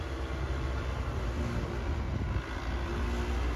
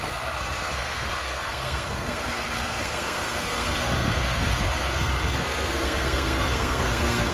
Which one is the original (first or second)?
first